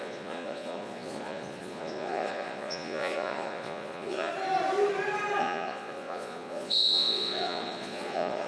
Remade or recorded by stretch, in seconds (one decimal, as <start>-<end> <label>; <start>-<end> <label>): 0.0-4.3 remade; 4.3-5.4 recorded; 5.4-8.5 remade